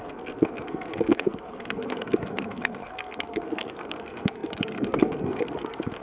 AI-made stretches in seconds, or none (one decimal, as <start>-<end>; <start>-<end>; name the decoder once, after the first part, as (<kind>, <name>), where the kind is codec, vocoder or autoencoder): 0.0-6.0 (codec, SNAC)